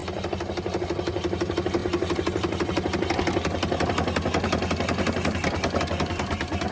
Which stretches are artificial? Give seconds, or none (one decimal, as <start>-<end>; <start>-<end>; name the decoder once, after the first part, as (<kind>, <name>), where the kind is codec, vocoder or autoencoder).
none